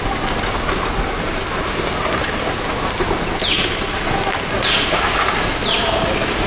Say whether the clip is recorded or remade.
recorded